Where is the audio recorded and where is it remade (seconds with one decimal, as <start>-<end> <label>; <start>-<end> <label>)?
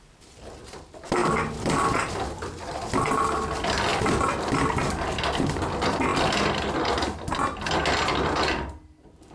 0.0-1.2 recorded; 1.2-2.2 remade; 2.2-3.9 recorded; 3.9-5.1 remade; 5.1-9.3 recorded